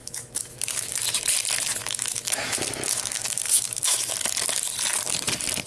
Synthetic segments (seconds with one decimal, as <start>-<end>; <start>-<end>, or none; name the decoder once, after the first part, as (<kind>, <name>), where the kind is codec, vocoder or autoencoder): 0.0-0.9 (autoencoder, DAC-VAE); 1.8-4.1